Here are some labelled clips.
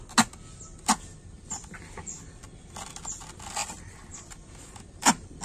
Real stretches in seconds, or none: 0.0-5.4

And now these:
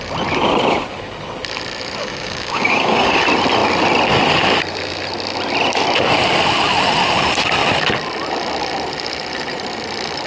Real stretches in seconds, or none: 0.0-2.0; 3.2-10.3

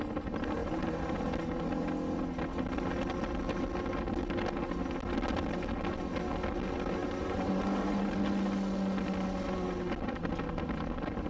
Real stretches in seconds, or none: 0.0-0.6; 1.2-7.0; 8.2-11.3

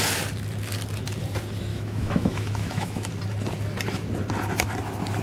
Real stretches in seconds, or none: 0.0-1.7; 3.1-5.2